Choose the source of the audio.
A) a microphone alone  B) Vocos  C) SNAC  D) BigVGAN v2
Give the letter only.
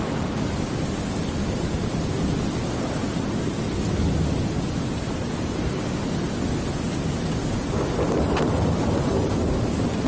A